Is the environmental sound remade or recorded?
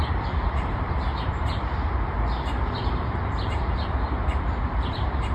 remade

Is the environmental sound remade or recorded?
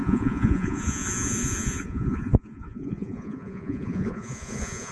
remade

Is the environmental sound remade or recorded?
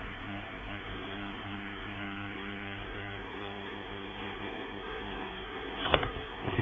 remade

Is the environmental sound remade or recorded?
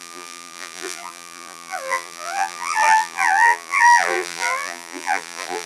remade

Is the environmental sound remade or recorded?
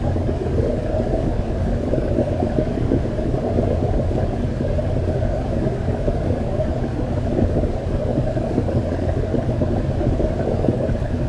remade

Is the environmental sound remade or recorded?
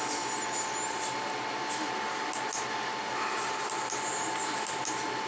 recorded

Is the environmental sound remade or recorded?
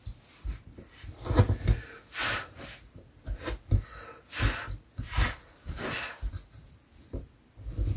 recorded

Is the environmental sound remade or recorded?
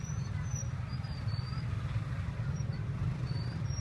recorded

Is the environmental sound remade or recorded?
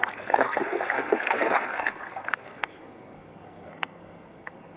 remade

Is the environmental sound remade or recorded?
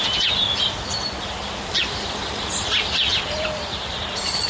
remade